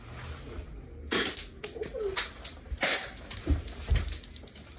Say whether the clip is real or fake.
real